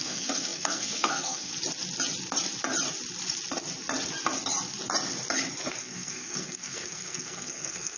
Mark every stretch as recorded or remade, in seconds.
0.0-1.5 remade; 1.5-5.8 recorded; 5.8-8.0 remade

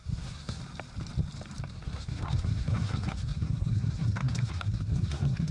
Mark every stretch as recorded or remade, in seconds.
0.0-0.6 remade; 0.6-1.7 recorded; 1.7-5.5 remade

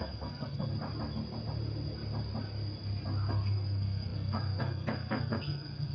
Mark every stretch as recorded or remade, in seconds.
0.0-0.7 remade; 0.7-3.3 recorded; 3.3-5.9 remade